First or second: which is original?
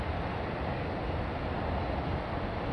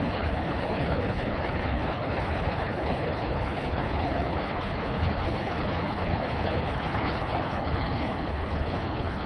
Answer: first